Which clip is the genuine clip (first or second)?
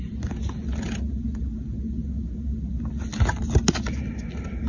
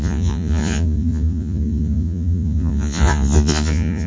first